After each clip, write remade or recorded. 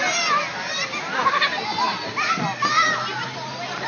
recorded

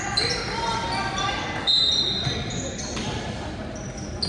recorded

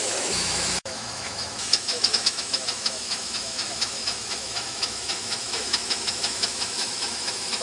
remade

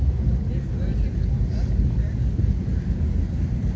recorded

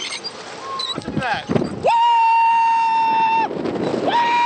recorded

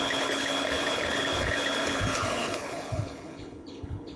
remade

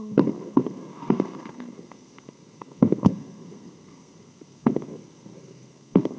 remade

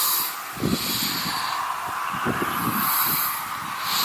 recorded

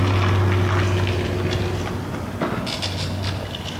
recorded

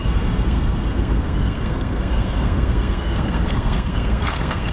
remade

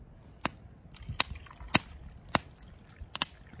recorded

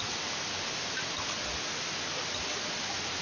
recorded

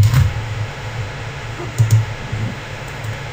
remade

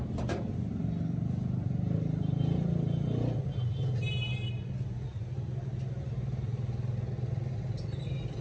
recorded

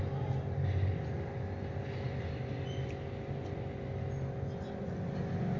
recorded